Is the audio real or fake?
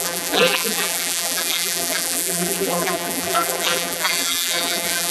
fake